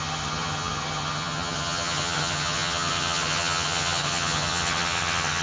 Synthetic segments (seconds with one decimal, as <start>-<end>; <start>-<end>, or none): 0.0-5.4